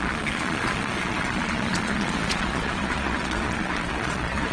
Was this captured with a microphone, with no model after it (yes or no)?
no